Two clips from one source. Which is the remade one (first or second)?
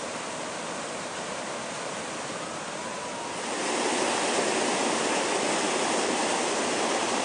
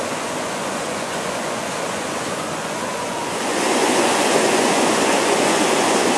second